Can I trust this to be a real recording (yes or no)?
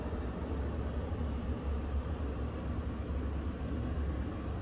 yes